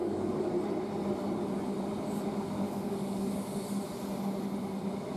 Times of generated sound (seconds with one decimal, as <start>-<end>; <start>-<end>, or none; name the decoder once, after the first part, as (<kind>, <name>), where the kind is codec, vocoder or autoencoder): 0.0-0.5 (codec, DAC); 2.3-3.7